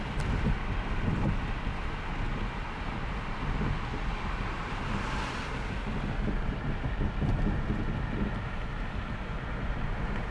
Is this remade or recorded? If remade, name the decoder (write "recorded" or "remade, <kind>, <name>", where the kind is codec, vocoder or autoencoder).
recorded